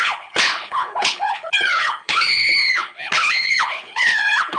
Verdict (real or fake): fake